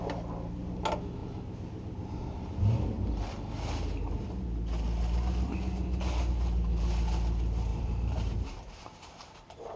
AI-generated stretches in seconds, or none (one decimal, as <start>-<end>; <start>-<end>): 7.7-9.4